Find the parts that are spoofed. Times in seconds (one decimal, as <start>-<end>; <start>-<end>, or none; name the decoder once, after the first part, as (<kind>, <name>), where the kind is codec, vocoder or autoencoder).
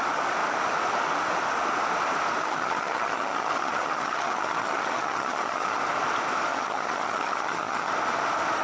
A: 2.4-5.8 (vocoder, HiFi-GAN); 6.5-7.9